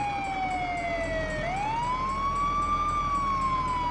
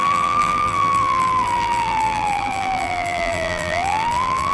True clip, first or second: first